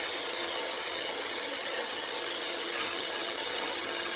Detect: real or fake fake